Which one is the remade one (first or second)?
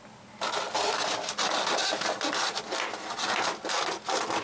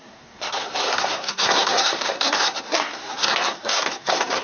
second